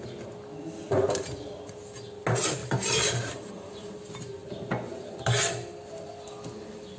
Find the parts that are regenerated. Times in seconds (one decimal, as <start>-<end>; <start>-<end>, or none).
2.6-3.9